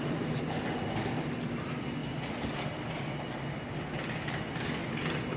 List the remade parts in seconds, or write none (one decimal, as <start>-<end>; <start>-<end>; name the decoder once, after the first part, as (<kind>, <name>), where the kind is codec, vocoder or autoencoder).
none